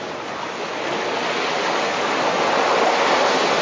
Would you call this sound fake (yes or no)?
no